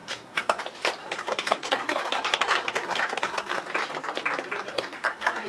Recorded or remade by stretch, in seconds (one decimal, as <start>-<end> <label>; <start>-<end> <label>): 0.0-0.6 remade; 0.6-1.0 recorded; 1.0-3.6 remade; 3.6-4.7 recorded; 4.7-5.5 remade